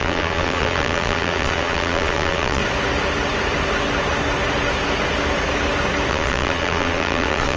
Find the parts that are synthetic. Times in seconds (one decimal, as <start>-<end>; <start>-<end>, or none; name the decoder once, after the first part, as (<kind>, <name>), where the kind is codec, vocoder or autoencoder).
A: 0.0-2.6 (vocoder, Vocos); 6.1-7.6